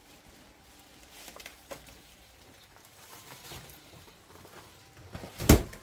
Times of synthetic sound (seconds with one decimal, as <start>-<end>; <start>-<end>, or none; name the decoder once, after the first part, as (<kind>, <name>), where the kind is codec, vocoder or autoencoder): 1.4-4.8 (vocoder, BigVGAN v2)